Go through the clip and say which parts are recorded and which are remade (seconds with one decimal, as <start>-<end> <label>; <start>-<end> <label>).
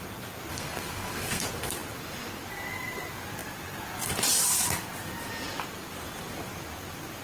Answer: 0.0-0.5 recorded; 0.5-1.4 remade; 1.4-7.2 recorded